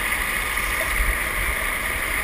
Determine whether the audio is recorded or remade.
recorded